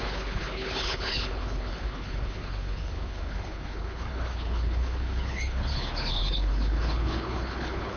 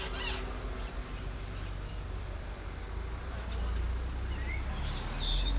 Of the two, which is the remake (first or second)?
first